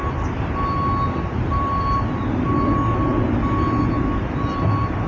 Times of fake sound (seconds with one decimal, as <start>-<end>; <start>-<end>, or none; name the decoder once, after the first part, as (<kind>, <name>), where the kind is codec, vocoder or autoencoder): none